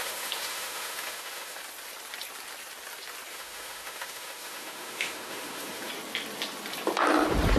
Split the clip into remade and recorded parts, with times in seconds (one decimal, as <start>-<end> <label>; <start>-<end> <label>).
0.0-1.6 remade; 1.6-3.3 recorded; 3.3-5.9 remade; 5.9-7.6 recorded